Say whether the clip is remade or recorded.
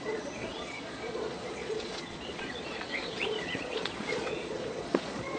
remade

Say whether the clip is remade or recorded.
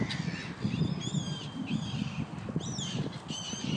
recorded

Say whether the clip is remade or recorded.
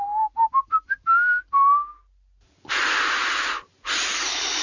recorded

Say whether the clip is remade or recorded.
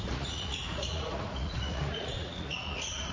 remade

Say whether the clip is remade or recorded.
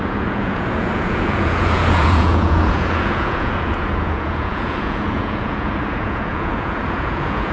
remade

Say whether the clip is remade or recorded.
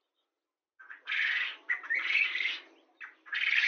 recorded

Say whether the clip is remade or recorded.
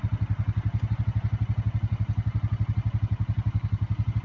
recorded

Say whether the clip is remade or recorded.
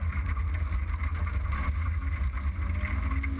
recorded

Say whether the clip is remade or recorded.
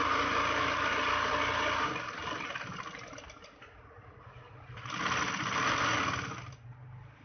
recorded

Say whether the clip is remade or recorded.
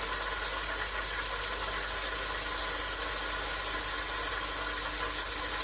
recorded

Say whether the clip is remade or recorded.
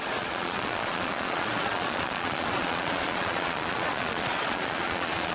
remade